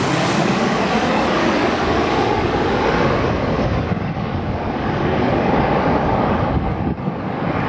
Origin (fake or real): fake